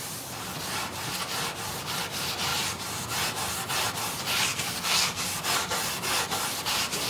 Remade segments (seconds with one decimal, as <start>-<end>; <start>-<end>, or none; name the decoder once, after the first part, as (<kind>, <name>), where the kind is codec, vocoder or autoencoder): 4.5-5.2 (codec, SNAC)